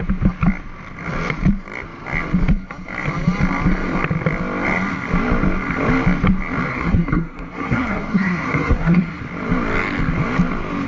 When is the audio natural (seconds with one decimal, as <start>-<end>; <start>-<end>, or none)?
0.0-6.7; 9.2-10.9